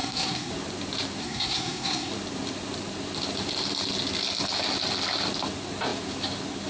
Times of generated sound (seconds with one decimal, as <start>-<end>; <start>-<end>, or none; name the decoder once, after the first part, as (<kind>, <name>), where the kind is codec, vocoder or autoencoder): 0.0-0.5 (codec, SNAC); 1.2-2.1